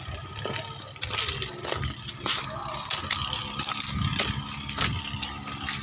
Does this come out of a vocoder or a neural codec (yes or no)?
no